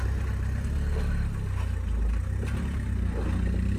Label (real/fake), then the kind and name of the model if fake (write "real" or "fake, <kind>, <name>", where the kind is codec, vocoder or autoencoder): real